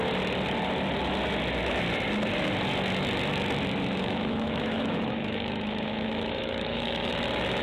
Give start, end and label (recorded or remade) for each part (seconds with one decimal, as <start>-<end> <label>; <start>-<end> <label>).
0.0-4.0 recorded; 4.0-7.1 remade; 7.1-7.6 recorded